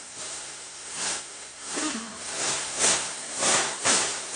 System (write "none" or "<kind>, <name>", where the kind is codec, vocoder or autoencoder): codec, SNAC